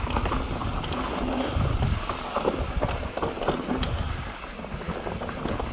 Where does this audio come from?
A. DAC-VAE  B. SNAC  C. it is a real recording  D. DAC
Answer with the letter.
C